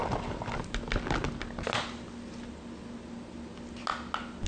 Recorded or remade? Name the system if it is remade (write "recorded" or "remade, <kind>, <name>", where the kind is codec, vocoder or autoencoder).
recorded